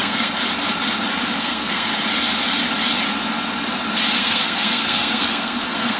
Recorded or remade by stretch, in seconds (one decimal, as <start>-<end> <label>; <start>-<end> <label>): 0.0-0.4 remade; 0.4-1.4 recorded; 1.4-1.9 remade; 1.9-4.2 recorded; 4.2-6.0 remade